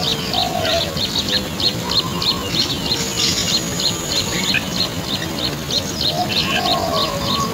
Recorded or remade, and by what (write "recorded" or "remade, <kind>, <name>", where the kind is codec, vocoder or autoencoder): recorded